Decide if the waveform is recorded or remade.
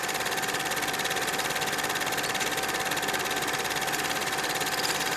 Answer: recorded